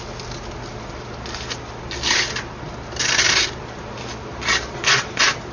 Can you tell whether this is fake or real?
real